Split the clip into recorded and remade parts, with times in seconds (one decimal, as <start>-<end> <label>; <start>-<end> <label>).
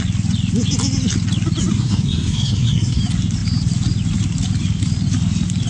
0.0-1.7 recorded; 1.7-3.0 remade; 3.0-5.7 recorded